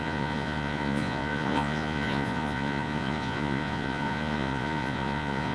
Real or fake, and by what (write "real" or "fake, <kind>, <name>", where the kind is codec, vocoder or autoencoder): fake, vocoder, Vocos